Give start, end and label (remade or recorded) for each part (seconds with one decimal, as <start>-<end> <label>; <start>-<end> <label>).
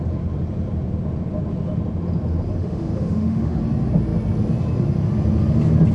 0.0-2.6 recorded; 2.6-3.6 remade; 3.6-5.9 recorded